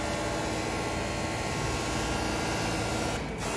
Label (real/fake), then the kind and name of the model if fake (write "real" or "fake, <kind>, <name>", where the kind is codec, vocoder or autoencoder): real